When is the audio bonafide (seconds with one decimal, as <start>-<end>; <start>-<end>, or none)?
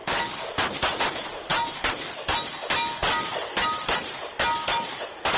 0.0-5.4